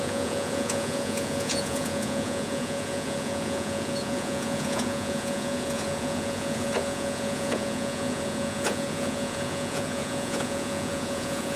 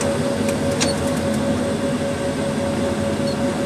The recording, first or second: second